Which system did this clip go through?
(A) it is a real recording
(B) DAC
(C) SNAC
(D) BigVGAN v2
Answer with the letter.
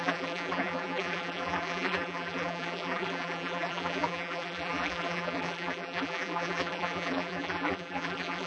D